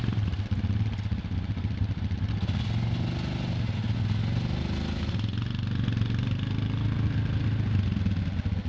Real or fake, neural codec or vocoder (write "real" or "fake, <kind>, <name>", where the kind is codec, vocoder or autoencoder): real